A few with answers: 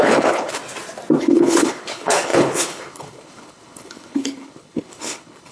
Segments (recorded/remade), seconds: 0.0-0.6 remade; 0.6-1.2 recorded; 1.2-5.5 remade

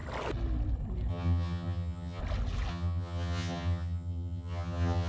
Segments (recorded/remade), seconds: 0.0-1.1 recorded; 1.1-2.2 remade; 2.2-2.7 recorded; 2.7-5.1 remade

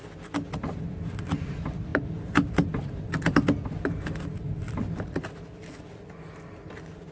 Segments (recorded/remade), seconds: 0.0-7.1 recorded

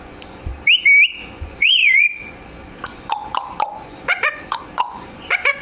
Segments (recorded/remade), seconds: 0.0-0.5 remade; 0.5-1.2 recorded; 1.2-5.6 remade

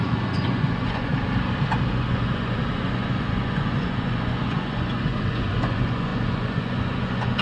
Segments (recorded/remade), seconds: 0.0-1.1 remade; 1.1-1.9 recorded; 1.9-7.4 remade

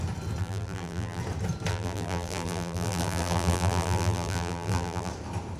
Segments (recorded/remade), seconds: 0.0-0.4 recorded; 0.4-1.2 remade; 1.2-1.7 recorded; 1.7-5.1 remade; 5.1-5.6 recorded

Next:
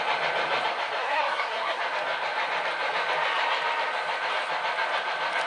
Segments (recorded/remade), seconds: 0.0-1.0 recorded; 1.0-1.8 remade; 1.8-5.5 recorded

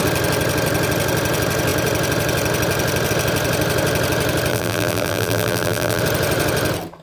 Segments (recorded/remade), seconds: 0.0-4.5 recorded; 4.5-6.0 remade; 6.0-7.0 recorded